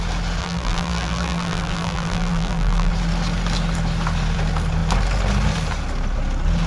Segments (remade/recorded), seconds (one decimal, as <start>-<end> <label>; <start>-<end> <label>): 0.0-0.4 recorded; 0.4-2.9 remade; 2.9-6.7 recorded

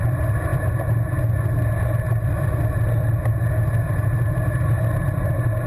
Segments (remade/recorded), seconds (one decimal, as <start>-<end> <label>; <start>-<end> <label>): 0.0-0.5 remade; 0.5-3.9 recorded; 3.9-5.7 remade

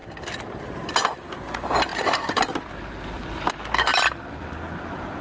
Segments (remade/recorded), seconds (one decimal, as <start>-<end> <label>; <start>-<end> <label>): 0.0-3.9 recorded; 3.9-5.2 remade